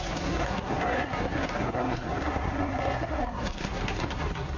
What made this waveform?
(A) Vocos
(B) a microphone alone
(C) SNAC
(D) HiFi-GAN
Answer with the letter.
C